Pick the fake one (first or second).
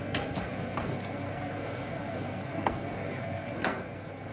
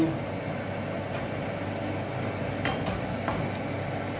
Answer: first